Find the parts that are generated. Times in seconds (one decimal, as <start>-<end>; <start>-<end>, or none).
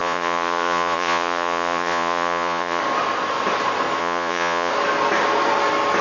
0.0-2.8; 4.0-4.7